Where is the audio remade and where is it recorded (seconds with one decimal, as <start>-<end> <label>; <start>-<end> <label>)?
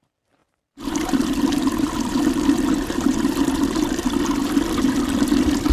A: 0.0-0.4 recorded; 0.4-3.8 remade; 3.8-4.4 recorded; 4.4-5.0 remade; 5.0-5.7 recorded